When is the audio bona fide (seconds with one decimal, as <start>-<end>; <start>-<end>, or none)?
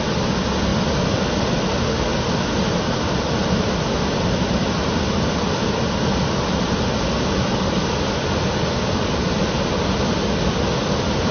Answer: 0.0-11.3